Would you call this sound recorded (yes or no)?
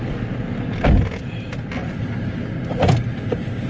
yes